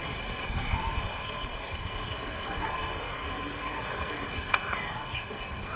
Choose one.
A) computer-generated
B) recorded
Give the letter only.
A